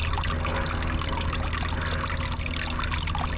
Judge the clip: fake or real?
real